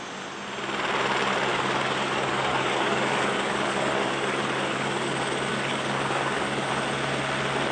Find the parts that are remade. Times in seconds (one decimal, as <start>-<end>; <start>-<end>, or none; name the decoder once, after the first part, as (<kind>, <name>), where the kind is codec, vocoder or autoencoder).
1.5-5.1 (codec, DAC); 5.5-6.7